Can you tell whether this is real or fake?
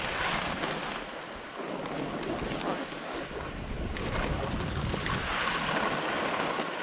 real